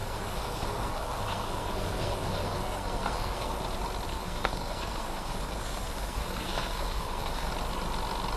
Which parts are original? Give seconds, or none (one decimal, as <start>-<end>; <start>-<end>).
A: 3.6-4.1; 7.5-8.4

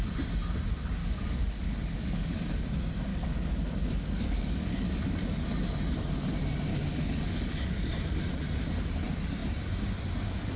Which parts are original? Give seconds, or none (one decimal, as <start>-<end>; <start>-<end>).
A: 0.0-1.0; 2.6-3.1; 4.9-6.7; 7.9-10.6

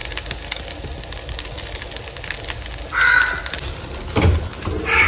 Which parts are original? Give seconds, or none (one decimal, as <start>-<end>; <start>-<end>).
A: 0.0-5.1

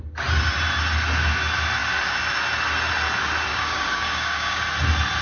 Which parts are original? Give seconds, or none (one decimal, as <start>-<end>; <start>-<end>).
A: 0.0-3.5; 4.6-5.2